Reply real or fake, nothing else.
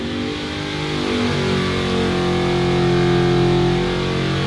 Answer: real